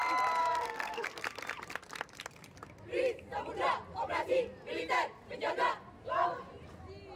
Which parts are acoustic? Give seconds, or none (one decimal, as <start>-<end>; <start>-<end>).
0.0-0.4; 1.2-7.2